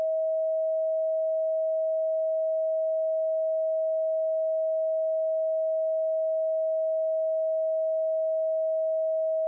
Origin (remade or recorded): recorded